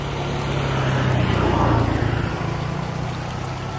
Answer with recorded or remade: recorded